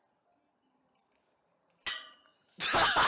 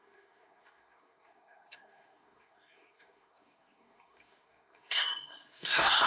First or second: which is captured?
first